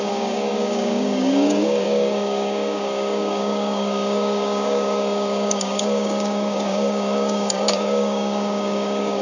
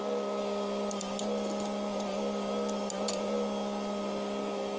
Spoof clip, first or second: first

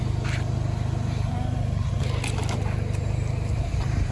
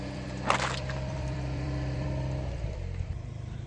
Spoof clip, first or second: second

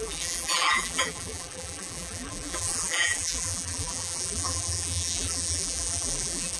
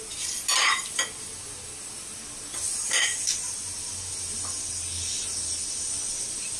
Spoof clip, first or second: first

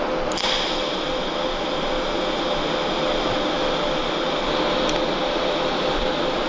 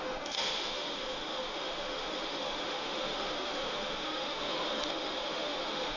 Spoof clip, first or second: second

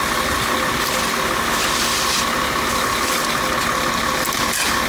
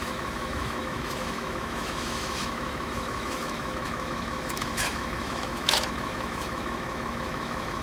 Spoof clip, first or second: second